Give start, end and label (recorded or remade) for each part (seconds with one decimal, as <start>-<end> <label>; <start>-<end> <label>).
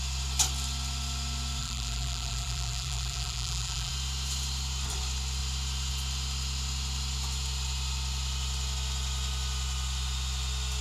0.0-1.6 recorded; 1.6-3.9 remade; 3.9-10.8 recorded